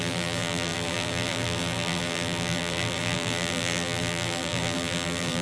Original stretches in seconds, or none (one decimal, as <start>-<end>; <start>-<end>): none